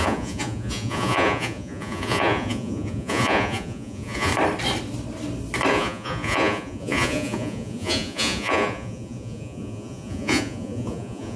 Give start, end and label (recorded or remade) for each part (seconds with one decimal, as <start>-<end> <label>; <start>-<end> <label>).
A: 0.0-4.3 remade; 4.3-5.7 recorded; 5.7-11.4 remade

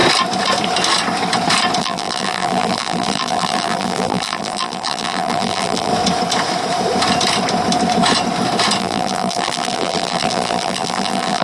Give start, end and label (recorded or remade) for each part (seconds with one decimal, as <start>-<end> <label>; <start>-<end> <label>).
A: 0.0-1.8 recorded; 1.8-5.9 remade; 5.9-8.8 recorded; 8.8-11.4 remade

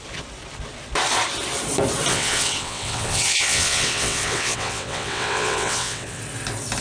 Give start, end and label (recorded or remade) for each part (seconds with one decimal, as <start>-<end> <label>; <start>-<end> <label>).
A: 0.0-2.1 recorded; 2.1-6.2 remade; 6.2-6.8 recorded

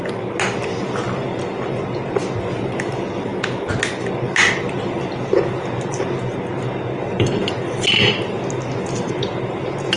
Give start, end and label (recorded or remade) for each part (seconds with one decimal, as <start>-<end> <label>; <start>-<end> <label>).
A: 0.0-10.0 recorded

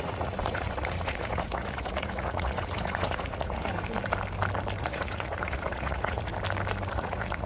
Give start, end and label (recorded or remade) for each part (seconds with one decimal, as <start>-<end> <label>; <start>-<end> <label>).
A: 0.0-3.7 remade; 3.7-4.8 recorded; 4.8-6.3 remade; 6.3-6.9 recorded; 6.9-7.5 remade

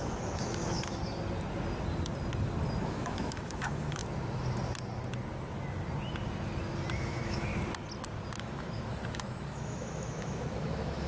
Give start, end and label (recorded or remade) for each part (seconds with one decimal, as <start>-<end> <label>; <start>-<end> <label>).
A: 0.0-1.0 remade; 1.0-2.8 recorded; 2.8-4.0 remade; 4.0-7.0 recorded; 7.0-7.5 remade; 7.5-8.4 recorded; 8.4-11.1 remade

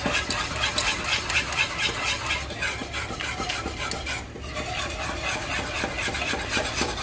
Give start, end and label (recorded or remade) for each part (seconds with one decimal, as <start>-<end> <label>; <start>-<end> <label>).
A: 0.0-7.0 recorded